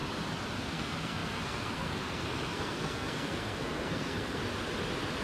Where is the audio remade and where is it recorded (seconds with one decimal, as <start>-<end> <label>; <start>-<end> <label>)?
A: 0.0-0.6 recorded; 0.6-4.4 remade; 4.4-5.2 recorded